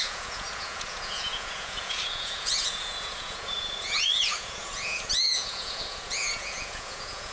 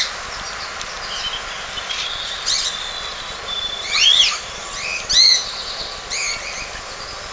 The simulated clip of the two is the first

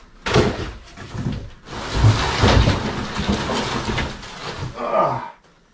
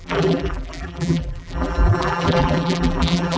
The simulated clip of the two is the second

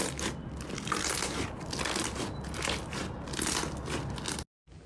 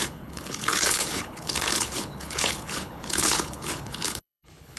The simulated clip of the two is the second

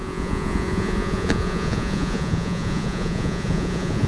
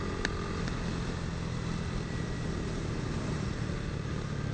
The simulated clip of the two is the first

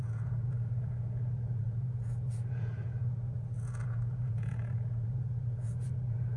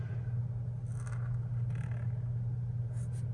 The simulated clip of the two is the first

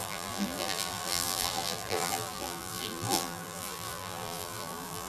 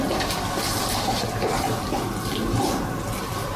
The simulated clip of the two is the first